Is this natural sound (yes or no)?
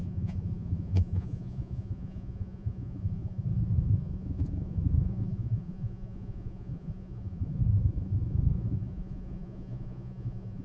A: no